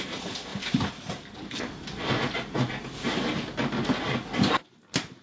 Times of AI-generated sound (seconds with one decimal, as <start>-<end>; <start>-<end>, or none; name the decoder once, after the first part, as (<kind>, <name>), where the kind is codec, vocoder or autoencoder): none